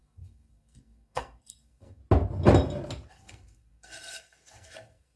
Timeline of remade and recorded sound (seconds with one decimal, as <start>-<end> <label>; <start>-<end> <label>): 0.0-2.0 remade; 2.0-3.1 recorded; 3.1-5.2 remade